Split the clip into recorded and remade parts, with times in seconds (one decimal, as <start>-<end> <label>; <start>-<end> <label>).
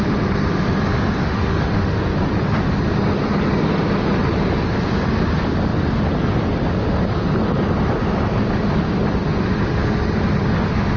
0.0-1.2 recorded; 1.2-2.0 remade; 2.0-11.0 recorded